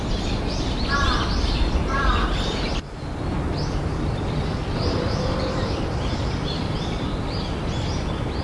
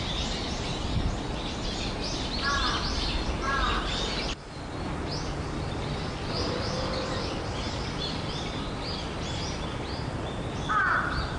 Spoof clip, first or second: first